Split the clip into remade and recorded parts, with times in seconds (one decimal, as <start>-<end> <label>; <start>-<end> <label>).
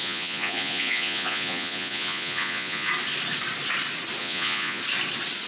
0.0-2.9 remade; 2.9-4.2 recorded; 4.2-4.8 remade; 4.8-5.5 recorded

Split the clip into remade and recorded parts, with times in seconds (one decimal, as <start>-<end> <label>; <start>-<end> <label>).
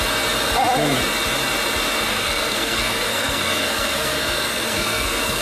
0.0-2.1 recorded; 2.1-5.4 remade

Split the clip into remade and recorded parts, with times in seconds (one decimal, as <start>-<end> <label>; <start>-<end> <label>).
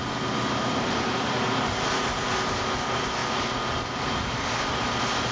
0.0-5.3 recorded